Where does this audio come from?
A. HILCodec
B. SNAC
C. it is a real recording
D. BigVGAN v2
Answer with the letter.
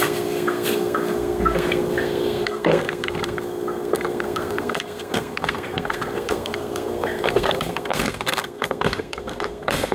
B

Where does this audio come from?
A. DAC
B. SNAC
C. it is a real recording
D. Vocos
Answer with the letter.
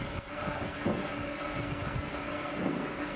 B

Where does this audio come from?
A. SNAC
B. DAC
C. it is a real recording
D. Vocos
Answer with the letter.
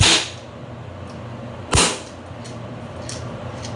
C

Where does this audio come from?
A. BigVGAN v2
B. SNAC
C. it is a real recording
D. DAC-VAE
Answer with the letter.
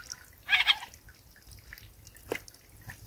C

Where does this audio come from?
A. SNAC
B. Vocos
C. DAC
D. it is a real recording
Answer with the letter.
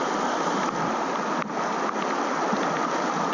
D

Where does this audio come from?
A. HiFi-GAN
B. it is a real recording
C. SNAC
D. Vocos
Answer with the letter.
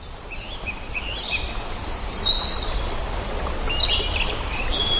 B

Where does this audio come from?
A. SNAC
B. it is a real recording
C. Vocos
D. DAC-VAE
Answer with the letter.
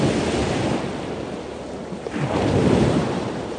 B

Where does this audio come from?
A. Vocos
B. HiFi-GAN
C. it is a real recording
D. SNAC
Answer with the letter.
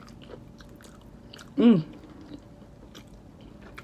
C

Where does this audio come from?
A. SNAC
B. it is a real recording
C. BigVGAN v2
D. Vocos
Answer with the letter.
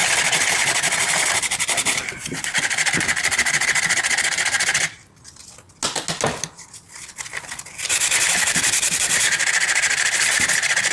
B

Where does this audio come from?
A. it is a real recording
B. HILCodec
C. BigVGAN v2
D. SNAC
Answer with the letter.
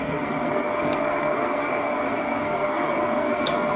D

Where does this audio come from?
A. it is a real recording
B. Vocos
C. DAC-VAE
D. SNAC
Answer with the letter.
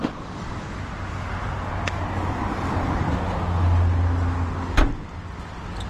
A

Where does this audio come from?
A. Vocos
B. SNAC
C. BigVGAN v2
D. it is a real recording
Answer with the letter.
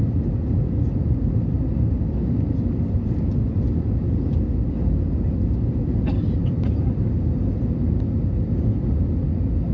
D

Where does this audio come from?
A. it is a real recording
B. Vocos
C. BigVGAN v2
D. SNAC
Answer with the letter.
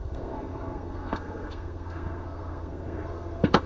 D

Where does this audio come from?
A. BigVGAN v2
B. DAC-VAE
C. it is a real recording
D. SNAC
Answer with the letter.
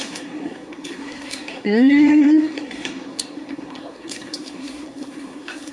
D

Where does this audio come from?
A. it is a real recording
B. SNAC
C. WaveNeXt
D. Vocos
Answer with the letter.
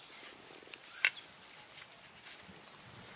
A